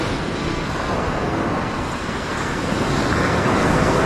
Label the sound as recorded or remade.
remade